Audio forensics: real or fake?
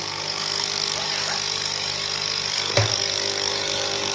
fake